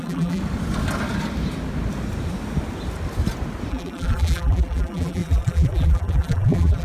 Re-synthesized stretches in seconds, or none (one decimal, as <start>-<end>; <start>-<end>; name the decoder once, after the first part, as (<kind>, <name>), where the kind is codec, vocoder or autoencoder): 0.0-0.4 (vocoder, BigVGAN v2); 3.7-6.8